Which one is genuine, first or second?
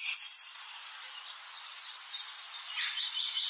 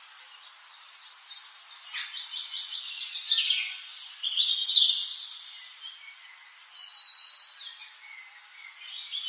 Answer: second